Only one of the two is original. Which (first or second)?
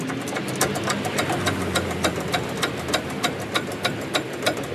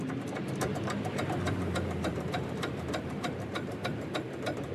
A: first